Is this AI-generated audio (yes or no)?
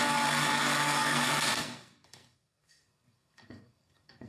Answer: yes